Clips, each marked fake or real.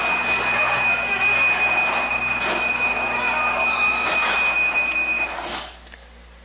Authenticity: real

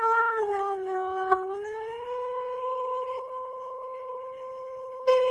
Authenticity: fake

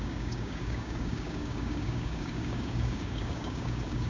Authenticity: fake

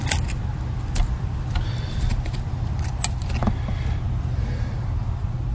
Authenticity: real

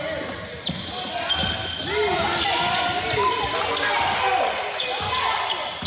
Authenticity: real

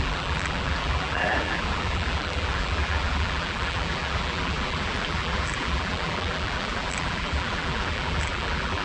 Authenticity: fake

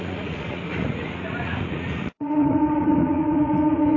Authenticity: fake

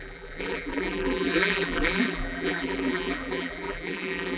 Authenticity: fake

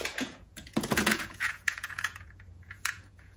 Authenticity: fake